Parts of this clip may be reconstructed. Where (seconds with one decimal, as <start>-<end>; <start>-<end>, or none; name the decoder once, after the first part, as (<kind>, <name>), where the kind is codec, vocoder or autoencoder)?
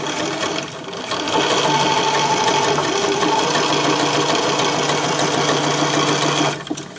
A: none